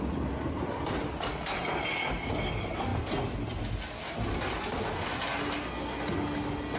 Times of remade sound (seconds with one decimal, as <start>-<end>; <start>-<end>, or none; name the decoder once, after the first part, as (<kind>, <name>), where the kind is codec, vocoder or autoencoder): none